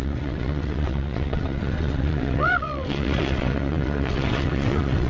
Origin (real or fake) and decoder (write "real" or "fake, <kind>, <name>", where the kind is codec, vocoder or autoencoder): fake, vocoder, WaveNeXt